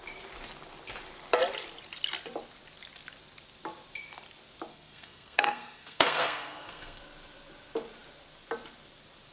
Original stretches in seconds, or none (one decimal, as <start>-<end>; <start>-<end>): 0.0-4.7; 7.0-9.3